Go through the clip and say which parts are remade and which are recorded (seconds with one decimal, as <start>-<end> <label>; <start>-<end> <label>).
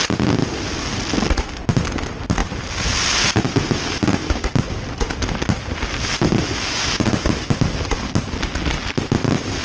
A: 0.0-9.6 recorded